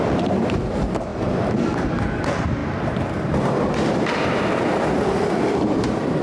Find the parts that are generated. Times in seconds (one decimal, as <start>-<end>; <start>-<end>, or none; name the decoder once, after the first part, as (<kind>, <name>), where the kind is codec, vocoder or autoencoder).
2.6-6.2 (vocoder, BigVGAN v2)